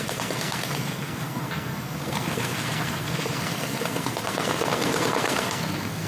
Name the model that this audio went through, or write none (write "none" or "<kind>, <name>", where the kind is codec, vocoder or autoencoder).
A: codec, SNAC